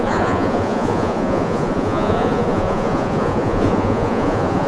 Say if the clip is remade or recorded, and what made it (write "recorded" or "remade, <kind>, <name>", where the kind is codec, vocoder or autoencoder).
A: remade, vocoder, Vocos